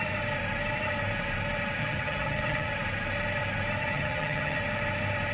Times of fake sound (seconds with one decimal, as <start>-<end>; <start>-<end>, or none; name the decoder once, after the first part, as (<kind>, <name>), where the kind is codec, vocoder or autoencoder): 1.8-2.7 (vocoder, HiFi-GAN); 3.9-4.6